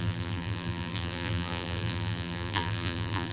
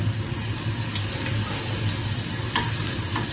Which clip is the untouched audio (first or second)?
second